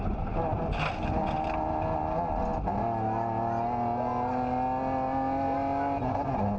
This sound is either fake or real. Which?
real